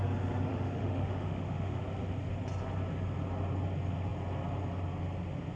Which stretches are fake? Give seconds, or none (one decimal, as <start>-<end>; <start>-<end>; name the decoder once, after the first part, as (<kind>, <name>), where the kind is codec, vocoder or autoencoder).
0.5-1.8 (autoencoder, DAC-VAE)